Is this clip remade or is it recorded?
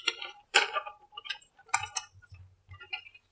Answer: remade